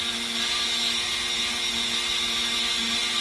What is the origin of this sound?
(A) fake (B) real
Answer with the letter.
B